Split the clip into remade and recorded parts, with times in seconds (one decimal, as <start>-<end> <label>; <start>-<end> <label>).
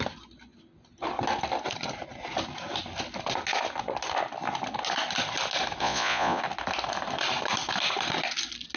0.0-5.8 recorded; 5.8-6.4 remade; 6.4-8.8 recorded